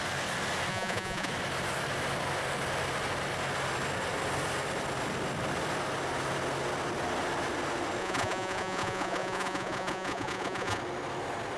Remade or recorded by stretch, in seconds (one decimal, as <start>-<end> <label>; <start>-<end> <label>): 0.0-0.7 recorded; 0.7-1.3 remade; 1.3-8.0 recorded; 8.0-10.8 remade; 10.8-11.6 recorded